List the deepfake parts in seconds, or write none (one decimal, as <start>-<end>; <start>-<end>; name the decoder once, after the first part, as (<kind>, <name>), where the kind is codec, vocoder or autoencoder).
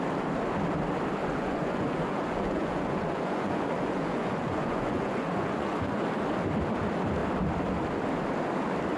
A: 1.2-6.0 (vocoder, Vocos)